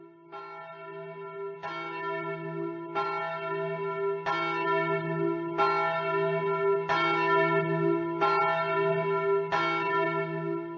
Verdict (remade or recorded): recorded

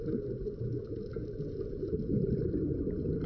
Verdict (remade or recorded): recorded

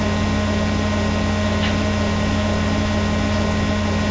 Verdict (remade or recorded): recorded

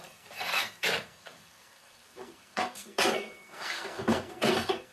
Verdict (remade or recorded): remade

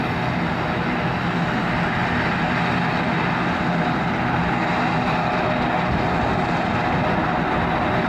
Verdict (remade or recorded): recorded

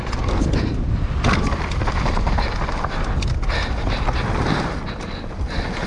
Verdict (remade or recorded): recorded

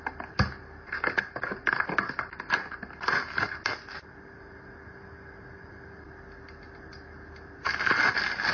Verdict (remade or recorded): recorded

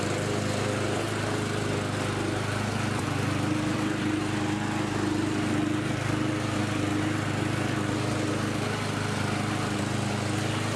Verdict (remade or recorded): recorded